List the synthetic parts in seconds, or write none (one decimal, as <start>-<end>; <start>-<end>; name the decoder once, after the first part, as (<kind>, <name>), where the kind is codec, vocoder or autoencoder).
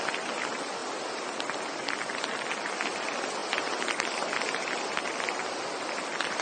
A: none